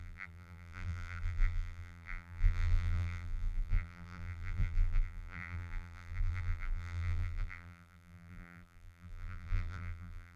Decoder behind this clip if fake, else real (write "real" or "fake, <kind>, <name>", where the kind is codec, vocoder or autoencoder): fake, vocoder, BigVGAN v2